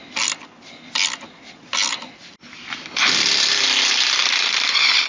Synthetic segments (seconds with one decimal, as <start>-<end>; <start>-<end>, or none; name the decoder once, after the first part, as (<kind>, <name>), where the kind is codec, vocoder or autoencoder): none